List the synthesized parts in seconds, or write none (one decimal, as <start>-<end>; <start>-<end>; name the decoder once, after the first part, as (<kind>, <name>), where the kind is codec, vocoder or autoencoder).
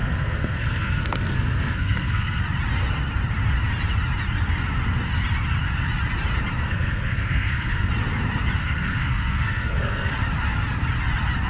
0.0-2.4 (codec, SNAC); 6.7-7.9; 8.6-10.1